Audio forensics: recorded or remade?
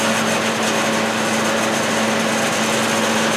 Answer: recorded